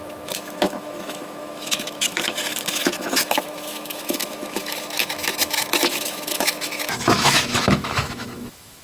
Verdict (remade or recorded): remade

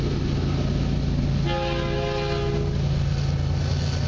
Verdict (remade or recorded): recorded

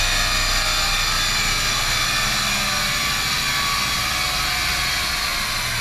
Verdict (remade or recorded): recorded